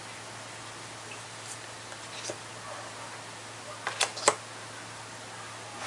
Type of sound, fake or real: real